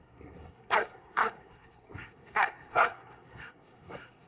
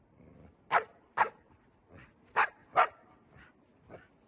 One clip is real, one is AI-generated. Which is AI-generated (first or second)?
first